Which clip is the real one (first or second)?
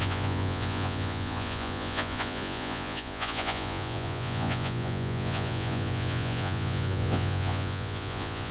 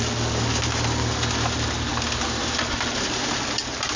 second